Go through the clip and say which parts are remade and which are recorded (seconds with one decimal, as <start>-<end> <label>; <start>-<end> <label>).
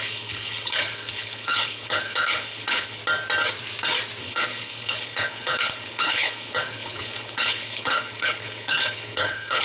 0.0-3.0 remade; 3.0-4.2 recorded; 4.2-9.6 remade